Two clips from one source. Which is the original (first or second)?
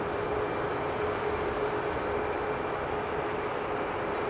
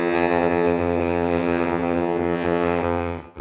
first